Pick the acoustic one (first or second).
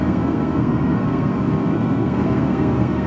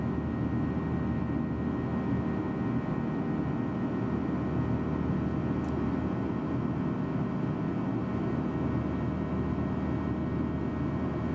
second